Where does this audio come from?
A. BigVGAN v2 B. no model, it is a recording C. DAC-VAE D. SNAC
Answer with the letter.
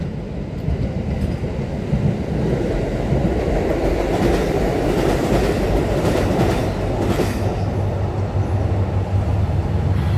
B